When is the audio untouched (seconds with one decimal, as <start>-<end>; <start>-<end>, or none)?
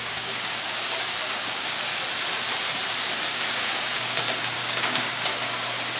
1.9-3.1; 5.3-6.0